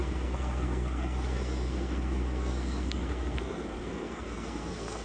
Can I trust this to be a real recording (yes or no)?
no